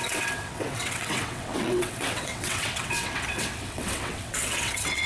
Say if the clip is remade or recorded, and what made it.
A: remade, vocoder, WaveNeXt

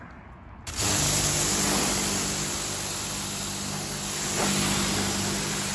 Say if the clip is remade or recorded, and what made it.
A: recorded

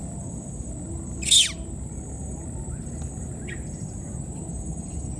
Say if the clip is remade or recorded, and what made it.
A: recorded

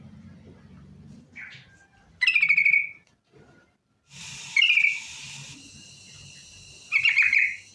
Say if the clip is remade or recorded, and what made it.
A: recorded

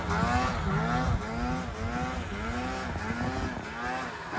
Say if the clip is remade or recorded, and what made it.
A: recorded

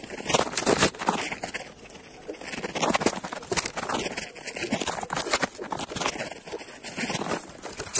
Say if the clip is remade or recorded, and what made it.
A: recorded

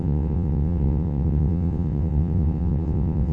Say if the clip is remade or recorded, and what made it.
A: remade, vocoder, WaveNeXt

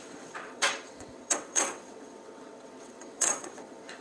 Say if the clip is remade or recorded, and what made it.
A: remade, vocoder, WaveNeXt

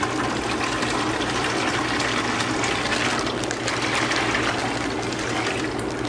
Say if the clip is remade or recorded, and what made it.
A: recorded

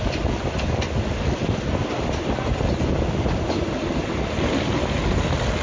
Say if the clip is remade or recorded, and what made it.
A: recorded